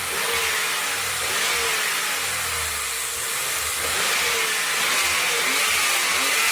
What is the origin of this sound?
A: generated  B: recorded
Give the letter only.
B